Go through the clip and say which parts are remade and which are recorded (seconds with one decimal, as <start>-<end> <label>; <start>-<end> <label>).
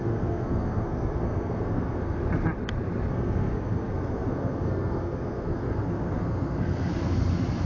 0.0-2.2 remade; 2.2-3.1 recorded; 3.1-6.9 remade; 6.9-7.7 recorded